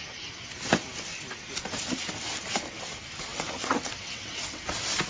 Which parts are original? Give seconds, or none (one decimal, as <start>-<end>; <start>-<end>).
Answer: 0.0-3.3; 4.6-5.1